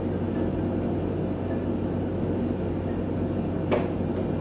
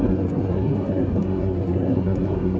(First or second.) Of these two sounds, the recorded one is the first